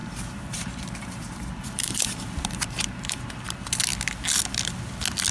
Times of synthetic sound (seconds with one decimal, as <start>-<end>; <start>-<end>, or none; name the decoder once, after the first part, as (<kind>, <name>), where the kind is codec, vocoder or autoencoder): 0.0-3.2 (vocoder, BigVGAN v2)